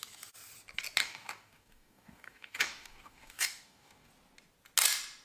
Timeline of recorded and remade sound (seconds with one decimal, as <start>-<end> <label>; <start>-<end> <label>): 0.0-1.0 recorded; 1.0-4.1 remade; 4.1-5.2 recorded